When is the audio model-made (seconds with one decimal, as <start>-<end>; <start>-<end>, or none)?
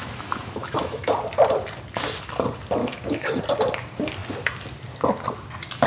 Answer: 0.0-1.0; 2.8-3.4